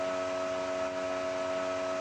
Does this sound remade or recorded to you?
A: recorded